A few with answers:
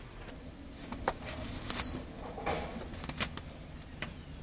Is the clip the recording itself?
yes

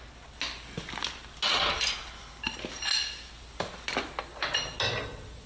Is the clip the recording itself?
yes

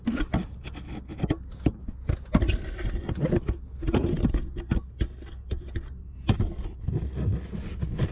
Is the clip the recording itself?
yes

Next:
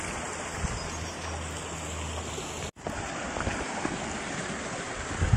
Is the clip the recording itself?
yes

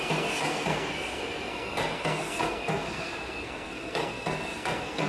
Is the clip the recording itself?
no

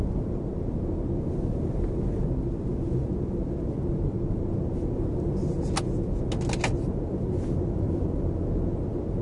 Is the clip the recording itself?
yes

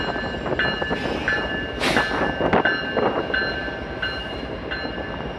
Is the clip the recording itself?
yes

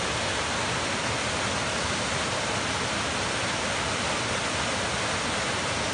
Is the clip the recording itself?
yes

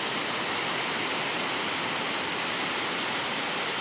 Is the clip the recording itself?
yes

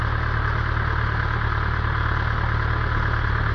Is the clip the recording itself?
yes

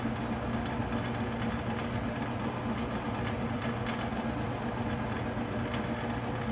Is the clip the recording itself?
yes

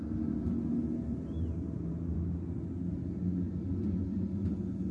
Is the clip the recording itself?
yes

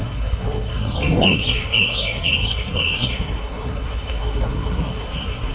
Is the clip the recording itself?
no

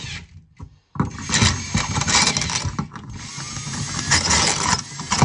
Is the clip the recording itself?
yes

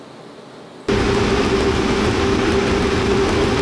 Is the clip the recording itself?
yes